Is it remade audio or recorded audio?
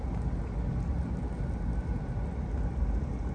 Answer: recorded